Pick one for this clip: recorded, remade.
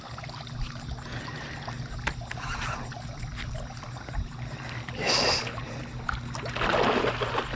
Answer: recorded